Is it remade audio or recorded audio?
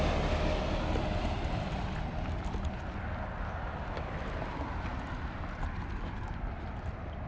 recorded